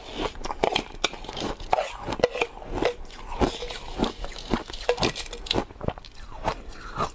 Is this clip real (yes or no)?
yes